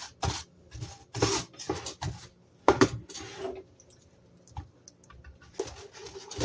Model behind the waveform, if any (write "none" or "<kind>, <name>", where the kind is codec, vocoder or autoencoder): none